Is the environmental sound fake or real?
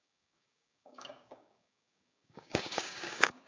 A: fake